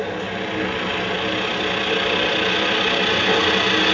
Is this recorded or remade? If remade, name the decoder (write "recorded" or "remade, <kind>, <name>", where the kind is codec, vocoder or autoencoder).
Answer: recorded